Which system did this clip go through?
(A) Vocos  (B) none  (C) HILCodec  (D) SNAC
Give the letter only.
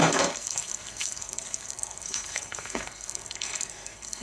D